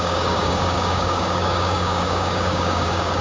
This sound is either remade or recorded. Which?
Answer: remade